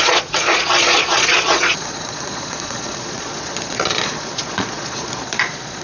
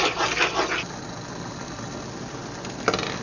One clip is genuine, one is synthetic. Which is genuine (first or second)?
second